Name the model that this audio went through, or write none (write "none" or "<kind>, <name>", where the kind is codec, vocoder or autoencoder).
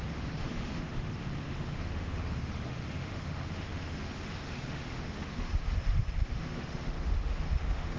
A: autoencoder, DAC-VAE